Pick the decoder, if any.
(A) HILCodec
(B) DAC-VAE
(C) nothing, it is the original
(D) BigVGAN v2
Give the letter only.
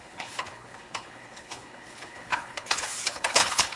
A